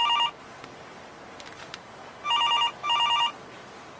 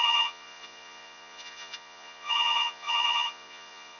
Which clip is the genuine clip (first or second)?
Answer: first